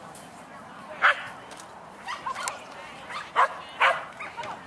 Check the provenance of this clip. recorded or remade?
recorded